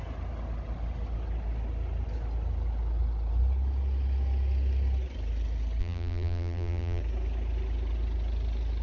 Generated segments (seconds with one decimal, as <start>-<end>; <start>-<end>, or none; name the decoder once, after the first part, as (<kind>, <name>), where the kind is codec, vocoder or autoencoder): 5.8-7.0 (vocoder, BigVGAN v2)